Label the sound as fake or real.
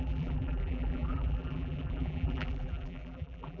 fake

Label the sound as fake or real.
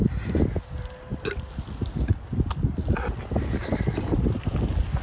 real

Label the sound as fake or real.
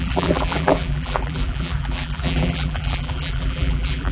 fake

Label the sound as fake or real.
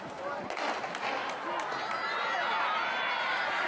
real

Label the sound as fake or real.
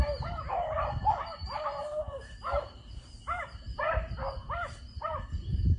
fake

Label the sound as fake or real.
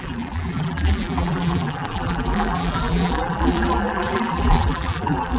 fake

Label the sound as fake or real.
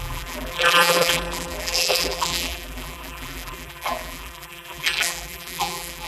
fake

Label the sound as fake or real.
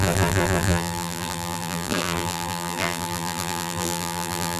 fake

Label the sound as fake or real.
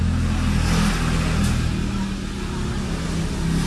real